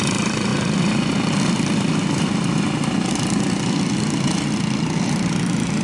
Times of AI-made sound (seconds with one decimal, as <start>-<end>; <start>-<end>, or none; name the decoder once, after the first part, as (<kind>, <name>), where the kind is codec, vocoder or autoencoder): none